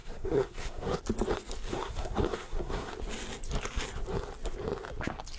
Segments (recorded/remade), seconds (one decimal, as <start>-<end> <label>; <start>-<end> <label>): 0.0-1.0 remade; 1.0-1.7 recorded; 1.7-2.9 remade; 2.9-5.4 recorded

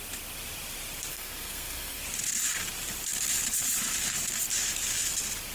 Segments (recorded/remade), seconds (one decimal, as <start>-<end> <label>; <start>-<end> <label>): 0.0-1.1 recorded; 1.1-2.0 remade; 2.0-5.5 recorded

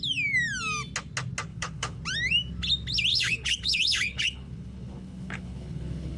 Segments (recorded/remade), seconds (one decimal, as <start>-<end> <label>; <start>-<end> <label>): 0.0-1.5 recorded; 1.5-2.0 remade; 2.0-3.1 recorded; 3.1-6.2 remade

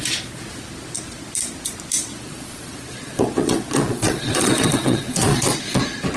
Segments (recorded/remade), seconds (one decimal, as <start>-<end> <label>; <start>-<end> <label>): 0.0-2.1 recorded; 2.1-5.8 remade; 5.8-6.2 recorded

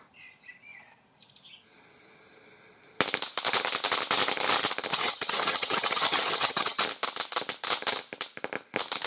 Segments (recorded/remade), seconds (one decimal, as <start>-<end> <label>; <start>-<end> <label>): 0.0-4.9 recorded; 4.9-6.8 remade; 6.8-9.1 recorded

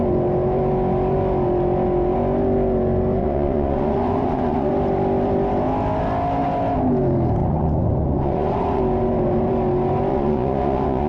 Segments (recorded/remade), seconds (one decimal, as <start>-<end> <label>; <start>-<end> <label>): 0.0-3.2 recorded; 3.2-4.7 remade; 4.7-7.4 recorded; 7.4-8.8 remade; 8.8-10.1 recorded; 10.1-11.1 remade